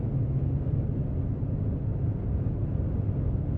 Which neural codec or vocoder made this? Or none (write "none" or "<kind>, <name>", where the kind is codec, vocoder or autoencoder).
none